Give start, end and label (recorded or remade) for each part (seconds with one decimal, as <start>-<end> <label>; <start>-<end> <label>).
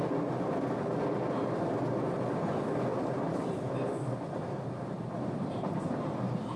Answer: 0.0-2.9 recorded; 2.9-5.8 remade; 5.8-6.6 recorded